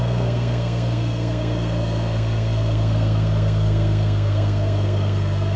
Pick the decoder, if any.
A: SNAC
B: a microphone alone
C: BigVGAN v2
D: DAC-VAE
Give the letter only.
A